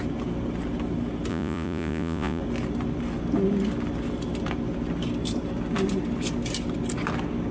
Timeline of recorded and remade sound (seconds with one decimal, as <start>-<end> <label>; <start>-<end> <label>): 0.0-1.3 recorded; 1.3-2.4 remade; 2.4-7.5 recorded